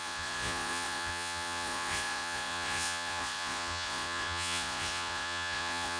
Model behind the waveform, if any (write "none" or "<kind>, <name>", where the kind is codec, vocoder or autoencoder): vocoder, Vocos